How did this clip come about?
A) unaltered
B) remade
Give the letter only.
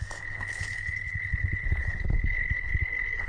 B